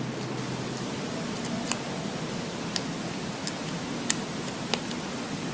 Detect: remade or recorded recorded